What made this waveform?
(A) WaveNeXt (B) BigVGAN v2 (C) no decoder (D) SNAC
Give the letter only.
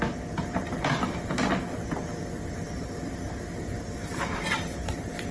C